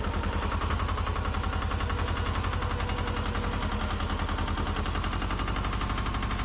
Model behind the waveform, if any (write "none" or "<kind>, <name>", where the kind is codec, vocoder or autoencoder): none